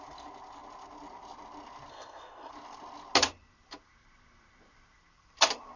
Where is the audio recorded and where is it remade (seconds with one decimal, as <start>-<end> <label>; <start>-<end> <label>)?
0.0-1.9 recorded; 1.9-2.5 remade; 2.5-5.8 recorded